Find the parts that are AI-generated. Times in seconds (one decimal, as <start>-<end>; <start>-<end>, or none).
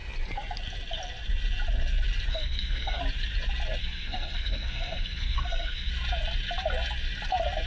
2.3-3.0; 3.8-5.9